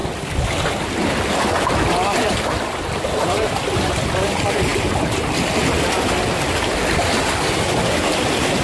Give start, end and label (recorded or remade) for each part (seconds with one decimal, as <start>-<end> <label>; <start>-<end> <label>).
0.0-8.6 recorded